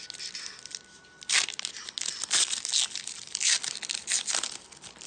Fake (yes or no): no